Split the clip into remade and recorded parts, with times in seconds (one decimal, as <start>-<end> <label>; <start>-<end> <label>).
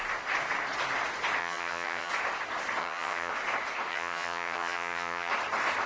0.0-1.4 recorded; 1.4-2.1 remade; 2.1-2.8 recorded; 2.8-3.3 remade; 3.3-3.9 recorded; 3.9-5.3 remade; 5.3-5.9 recorded